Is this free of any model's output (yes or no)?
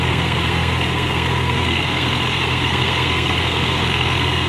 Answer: no